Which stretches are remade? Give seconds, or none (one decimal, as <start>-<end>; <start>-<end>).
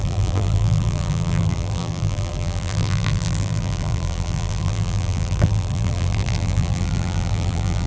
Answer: 0.0-7.9